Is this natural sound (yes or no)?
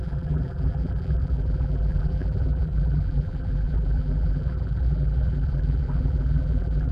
no